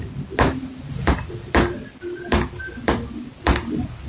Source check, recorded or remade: recorded